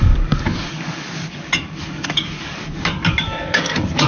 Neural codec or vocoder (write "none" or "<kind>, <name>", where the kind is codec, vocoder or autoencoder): codec, DAC